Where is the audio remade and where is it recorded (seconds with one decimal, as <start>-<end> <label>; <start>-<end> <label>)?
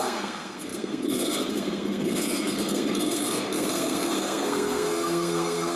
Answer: 0.0-5.8 remade